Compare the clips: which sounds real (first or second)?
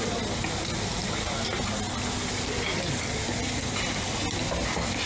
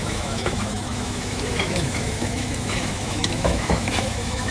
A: first